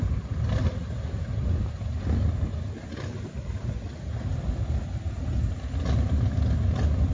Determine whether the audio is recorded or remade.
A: recorded